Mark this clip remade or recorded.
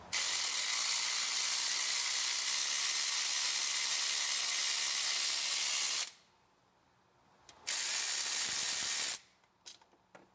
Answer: recorded